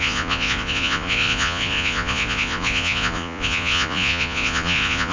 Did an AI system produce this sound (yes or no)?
yes